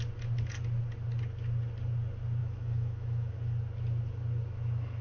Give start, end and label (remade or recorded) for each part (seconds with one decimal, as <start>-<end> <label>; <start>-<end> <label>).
0.0-2.4 recorded; 2.4-3.3 remade; 3.3-5.0 recorded